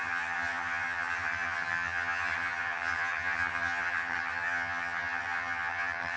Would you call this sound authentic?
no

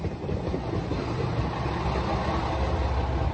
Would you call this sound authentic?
yes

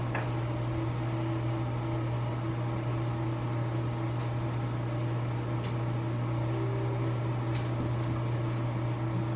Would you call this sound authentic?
yes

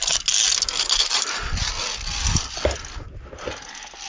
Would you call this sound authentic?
yes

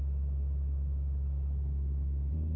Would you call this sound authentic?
yes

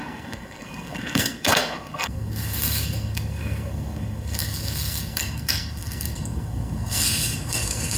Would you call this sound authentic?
no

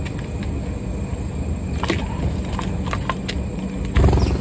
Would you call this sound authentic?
yes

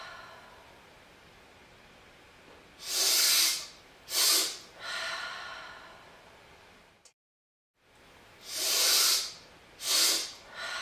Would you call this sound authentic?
yes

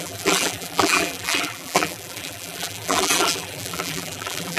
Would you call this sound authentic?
no